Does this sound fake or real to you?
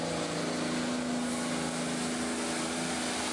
real